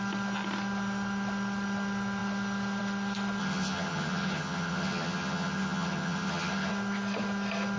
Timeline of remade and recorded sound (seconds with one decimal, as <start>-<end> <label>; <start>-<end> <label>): 0.0-3.4 recorded; 3.4-6.7 remade; 6.7-7.8 recorded